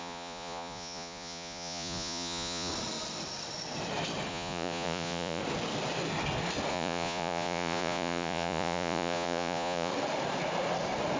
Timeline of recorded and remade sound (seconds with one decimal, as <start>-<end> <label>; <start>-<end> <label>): 0.0-2.7 remade; 2.7-4.3 recorded; 4.3-5.4 remade; 5.4-6.7 recorded; 6.7-9.9 remade; 9.9-11.2 recorded